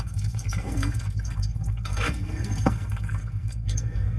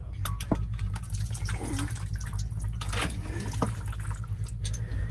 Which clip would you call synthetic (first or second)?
first